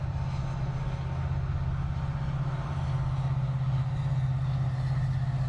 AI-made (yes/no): no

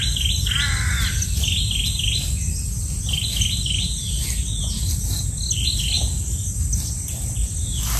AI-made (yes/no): no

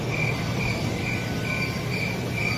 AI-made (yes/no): no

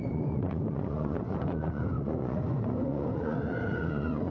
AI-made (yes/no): yes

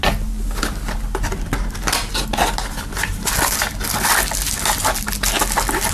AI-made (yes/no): no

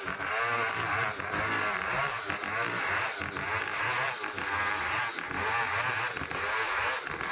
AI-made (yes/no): no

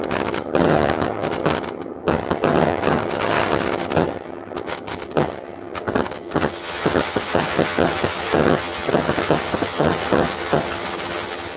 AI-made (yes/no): yes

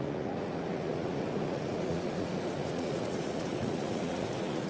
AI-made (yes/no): yes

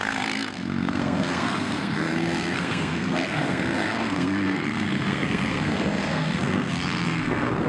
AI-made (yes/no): yes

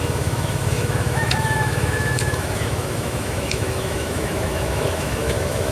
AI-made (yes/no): yes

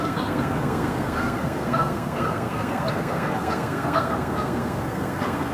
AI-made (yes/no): yes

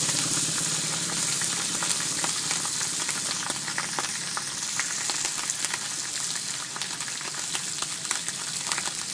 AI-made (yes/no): no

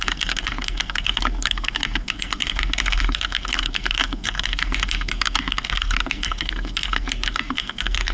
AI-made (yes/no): yes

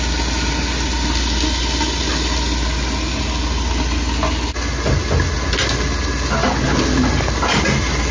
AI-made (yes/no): no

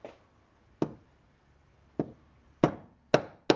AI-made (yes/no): no